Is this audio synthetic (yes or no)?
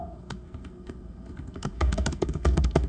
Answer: yes